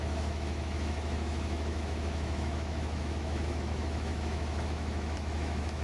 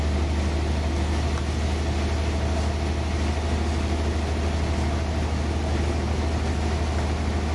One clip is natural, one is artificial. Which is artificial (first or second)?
first